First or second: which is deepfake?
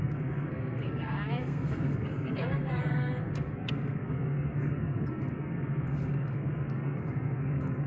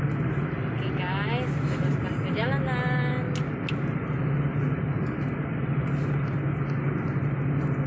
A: first